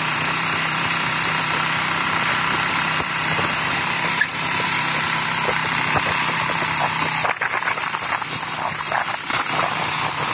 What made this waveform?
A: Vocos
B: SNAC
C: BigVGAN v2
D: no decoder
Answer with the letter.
C